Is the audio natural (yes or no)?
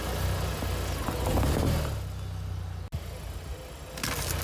yes